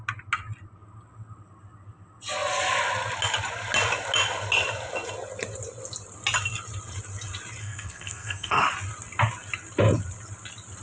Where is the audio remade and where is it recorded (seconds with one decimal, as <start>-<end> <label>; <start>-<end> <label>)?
0.0-7.6 recorded; 7.6-8.6 remade; 8.6-10.8 recorded